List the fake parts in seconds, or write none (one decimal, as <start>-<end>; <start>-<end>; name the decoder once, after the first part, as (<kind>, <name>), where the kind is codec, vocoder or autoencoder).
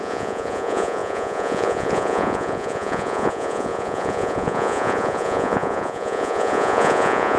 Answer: 0.0-7.4 (vocoder, Vocos)